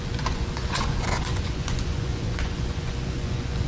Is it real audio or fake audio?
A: fake